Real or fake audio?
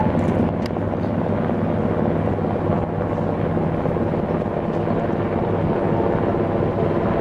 real